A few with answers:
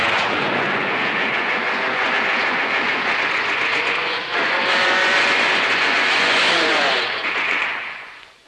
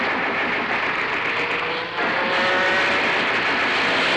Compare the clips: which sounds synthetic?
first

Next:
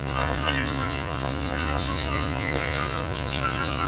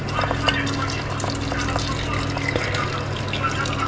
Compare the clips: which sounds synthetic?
first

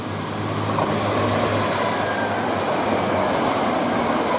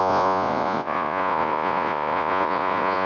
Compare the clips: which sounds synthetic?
second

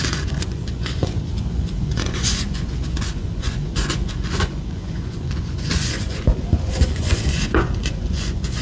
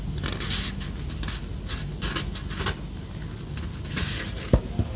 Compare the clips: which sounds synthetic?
first